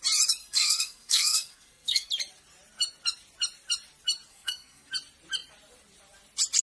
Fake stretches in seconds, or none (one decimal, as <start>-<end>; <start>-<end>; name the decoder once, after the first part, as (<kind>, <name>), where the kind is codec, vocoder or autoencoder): 0.4-2.1 (codec, SNAC); 4.3-4.9